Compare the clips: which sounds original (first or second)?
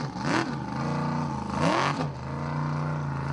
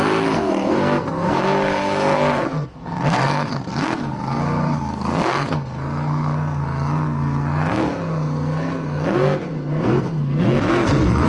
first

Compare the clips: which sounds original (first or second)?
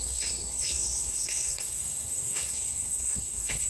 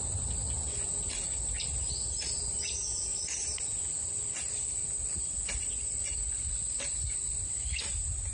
second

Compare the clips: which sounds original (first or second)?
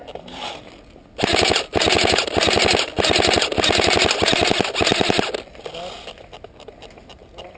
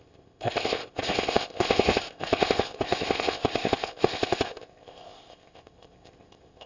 first